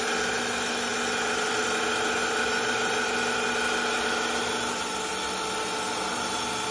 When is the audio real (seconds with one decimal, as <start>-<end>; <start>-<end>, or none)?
0.0-6.7